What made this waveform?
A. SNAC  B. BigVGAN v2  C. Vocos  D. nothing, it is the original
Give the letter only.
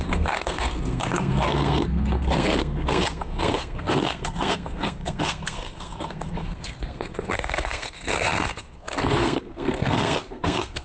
A